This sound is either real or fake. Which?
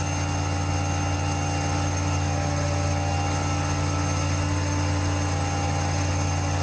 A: real